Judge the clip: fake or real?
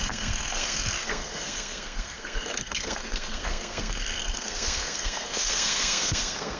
fake